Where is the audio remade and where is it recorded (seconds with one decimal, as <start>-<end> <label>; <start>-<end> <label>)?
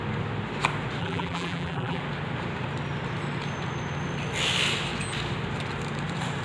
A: 0.0-1.0 recorded; 1.0-2.0 remade; 2.0-6.4 recorded